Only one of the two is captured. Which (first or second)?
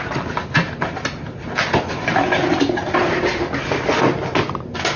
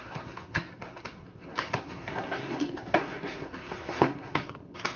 first